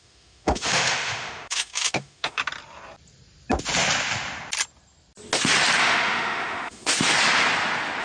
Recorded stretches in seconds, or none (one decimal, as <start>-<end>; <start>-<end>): 2.4-5.8; 6.9-8.0